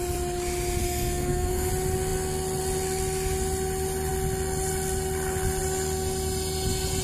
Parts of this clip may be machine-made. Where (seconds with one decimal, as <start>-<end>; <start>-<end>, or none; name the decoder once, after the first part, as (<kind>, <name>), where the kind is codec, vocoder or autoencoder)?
0.8-1.7 (codec, SNAC)